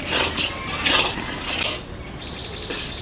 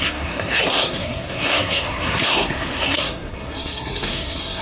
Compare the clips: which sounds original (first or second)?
first